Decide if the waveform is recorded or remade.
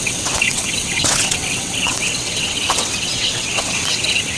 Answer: remade